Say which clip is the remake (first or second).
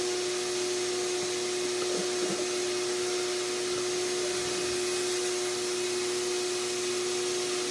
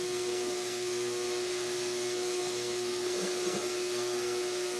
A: second